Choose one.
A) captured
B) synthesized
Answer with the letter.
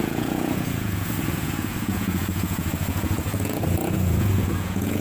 B